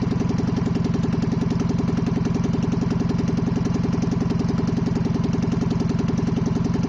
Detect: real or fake real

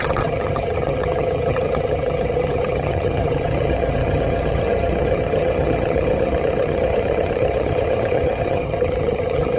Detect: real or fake fake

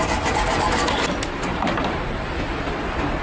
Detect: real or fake real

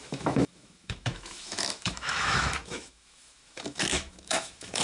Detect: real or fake fake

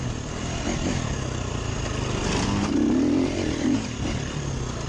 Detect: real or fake real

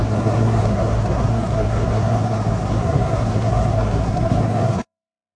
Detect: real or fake fake